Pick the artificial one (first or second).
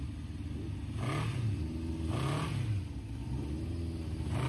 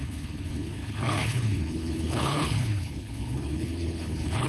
second